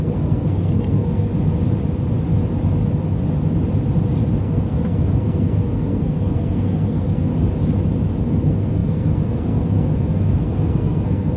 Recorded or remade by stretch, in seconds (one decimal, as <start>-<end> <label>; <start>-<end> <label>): 0.0-1.3 remade; 1.3-4.4 recorded; 4.4-7.3 remade; 7.3-8.2 recorded; 8.2-11.4 remade

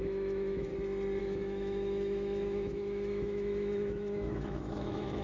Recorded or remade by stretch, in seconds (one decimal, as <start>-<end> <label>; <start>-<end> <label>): 0.0-0.7 remade; 0.7-1.2 recorded; 1.2-5.2 remade

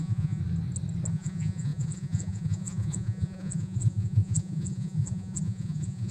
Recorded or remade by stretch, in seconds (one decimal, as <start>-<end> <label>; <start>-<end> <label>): 0.0-0.4 remade; 0.4-1.1 recorded; 1.1-6.1 remade